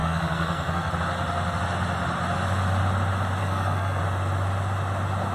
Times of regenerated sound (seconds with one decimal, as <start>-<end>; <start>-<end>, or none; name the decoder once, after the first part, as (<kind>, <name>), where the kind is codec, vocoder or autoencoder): 0.0-0.9 (codec, SNAC); 3.4-4.0